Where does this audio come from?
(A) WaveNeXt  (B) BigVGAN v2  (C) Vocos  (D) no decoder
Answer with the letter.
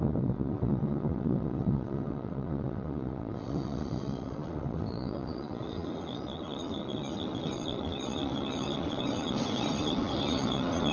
A